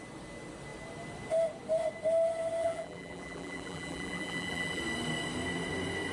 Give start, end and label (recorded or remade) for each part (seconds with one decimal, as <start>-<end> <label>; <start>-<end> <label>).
0.0-2.6 recorded; 2.6-4.8 remade; 4.8-6.1 recorded